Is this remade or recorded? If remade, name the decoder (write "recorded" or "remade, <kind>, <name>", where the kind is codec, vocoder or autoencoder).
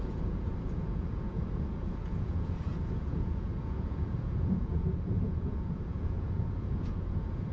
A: remade, vocoder, Vocos